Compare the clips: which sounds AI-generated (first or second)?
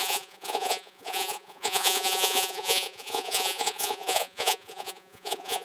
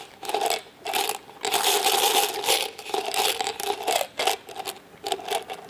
first